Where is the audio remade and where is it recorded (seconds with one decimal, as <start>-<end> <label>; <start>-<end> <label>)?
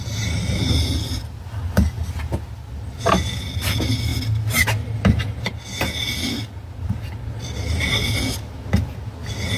0.0-9.6 recorded